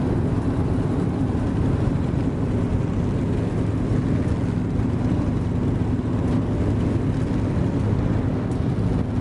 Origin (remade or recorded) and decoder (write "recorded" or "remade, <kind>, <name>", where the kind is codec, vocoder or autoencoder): recorded